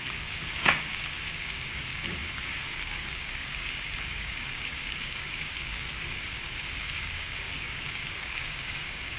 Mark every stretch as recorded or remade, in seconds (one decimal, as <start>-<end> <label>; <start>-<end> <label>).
0.0-9.2 remade